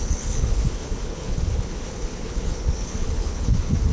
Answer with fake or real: fake